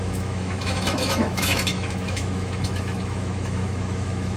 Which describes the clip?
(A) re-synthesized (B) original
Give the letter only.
A